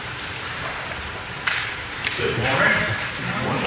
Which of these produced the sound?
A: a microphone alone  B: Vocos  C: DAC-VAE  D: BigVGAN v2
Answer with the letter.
D